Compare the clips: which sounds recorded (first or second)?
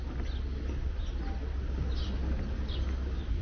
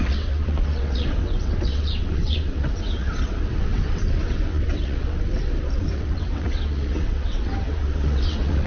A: first